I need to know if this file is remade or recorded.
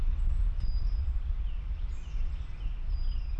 recorded